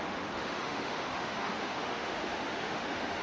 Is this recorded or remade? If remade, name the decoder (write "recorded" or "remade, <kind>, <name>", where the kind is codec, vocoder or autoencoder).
remade, autoencoder, DAC-VAE